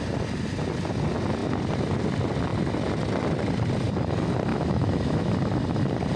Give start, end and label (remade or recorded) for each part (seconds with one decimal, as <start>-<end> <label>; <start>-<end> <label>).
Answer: 0.0-4.5 recorded; 4.5-5.3 remade; 5.3-6.2 recorded